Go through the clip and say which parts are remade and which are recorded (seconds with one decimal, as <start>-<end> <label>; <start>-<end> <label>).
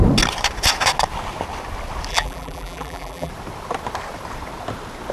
0.0-2.1 recorded; 2.1-3.3 remade; 3.3-5.1 recorded